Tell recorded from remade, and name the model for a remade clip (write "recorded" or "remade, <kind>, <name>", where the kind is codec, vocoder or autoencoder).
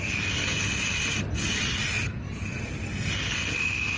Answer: recorded